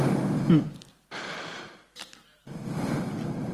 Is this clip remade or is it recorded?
recorded